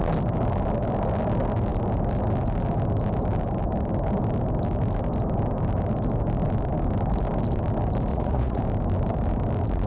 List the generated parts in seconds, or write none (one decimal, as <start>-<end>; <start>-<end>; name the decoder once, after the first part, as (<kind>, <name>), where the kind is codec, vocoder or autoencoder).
8.1-8.6 (vocoder, Vocos)